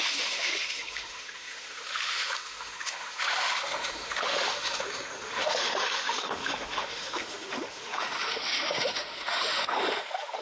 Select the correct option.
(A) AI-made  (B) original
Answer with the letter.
A